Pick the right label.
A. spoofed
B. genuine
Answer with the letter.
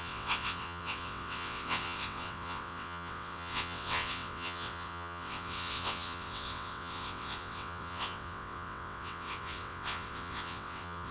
A